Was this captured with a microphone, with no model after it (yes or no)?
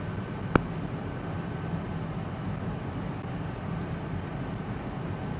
no